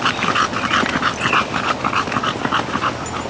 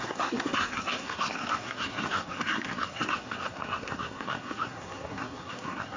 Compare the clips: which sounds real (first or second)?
first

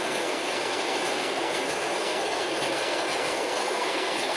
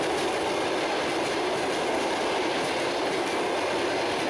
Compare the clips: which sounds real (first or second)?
second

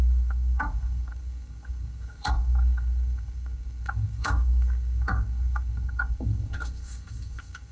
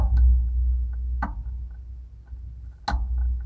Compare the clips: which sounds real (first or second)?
second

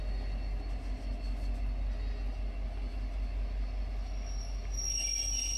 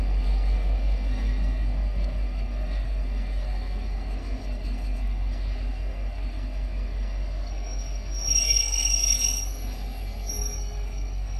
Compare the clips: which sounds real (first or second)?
first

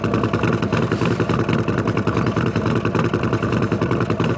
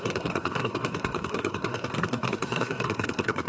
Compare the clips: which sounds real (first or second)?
first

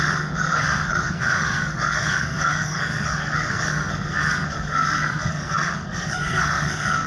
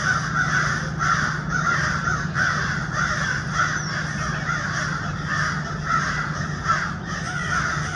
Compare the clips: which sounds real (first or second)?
second